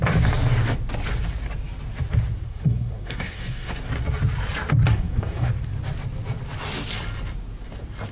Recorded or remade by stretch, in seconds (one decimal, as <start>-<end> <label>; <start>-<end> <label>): 0.0-2.4 recorded; 2.4-3.9 remade; 3.9-4.9 recorded; 4.9-5.5 remade; 5.5-8.1 recorded